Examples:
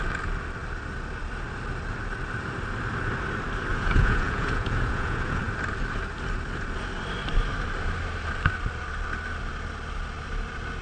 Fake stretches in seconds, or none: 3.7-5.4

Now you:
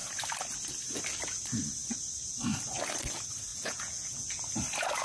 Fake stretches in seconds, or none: 3.5-4.4

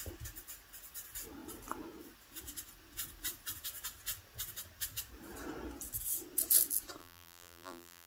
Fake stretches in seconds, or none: 7.0-8.1

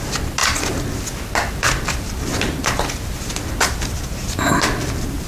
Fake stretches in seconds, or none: none

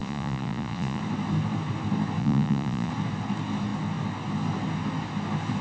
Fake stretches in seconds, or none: 0.0-1.0; 2.2-2.9

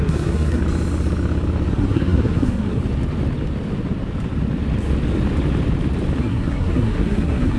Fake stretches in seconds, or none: 0.0-0.6; 1.7-2.8; 6.2-7.6

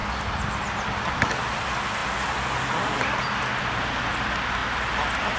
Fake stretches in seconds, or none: none